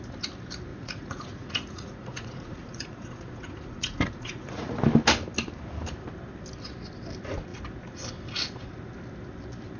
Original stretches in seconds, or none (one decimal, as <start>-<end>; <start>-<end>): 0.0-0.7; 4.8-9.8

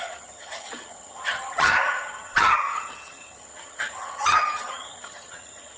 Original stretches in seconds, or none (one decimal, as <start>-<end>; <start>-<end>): none

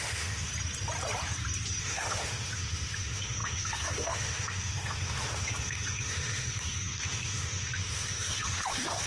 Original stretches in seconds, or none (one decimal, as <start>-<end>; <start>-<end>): 0.5-1.8

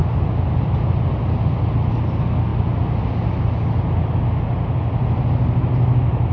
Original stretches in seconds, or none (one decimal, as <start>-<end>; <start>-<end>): 0.0-6.3

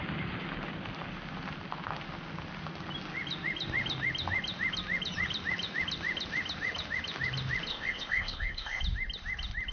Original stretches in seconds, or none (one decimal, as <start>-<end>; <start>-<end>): 0.0-7.7; 8.8-9.7